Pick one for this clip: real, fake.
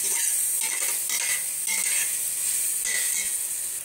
real